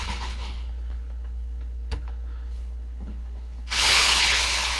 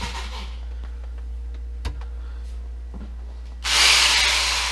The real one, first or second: second